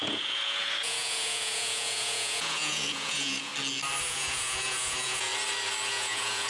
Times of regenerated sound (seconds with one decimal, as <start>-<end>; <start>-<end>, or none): 0.0-3.5; 4.0-5.3; 5.9-6.5